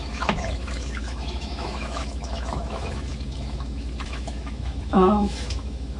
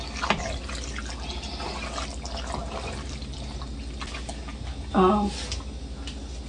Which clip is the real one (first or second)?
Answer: second